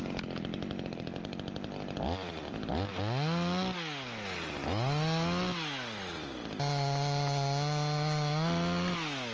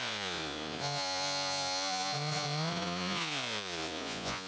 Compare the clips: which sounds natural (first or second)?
first